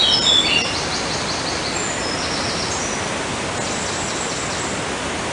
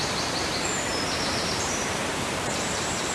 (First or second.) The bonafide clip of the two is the first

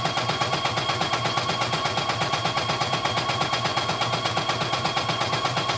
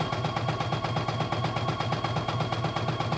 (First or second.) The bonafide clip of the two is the second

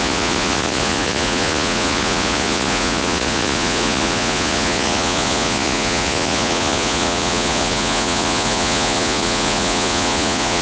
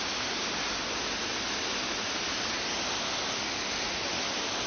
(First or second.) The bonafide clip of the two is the second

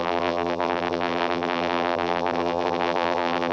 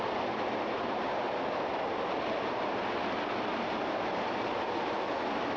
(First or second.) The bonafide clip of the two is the second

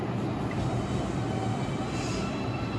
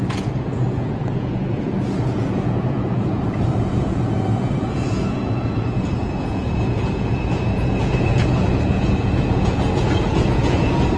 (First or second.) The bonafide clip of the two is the first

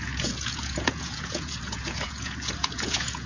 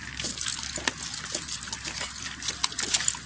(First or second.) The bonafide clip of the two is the second